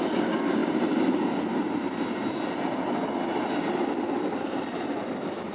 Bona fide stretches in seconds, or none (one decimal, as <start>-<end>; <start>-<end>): 0.6-3.9